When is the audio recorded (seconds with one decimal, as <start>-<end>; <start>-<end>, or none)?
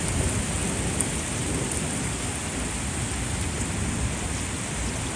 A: 0.0-5.2